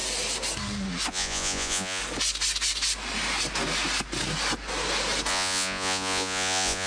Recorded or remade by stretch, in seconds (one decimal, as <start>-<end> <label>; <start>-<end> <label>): 0.0-1.1 recorded; 1.1-2.0 remade; 2.0-5.3 recorded; 5.3-6.9 remade